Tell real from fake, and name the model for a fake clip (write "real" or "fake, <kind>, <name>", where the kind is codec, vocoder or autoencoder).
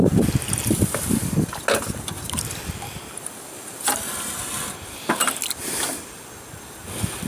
real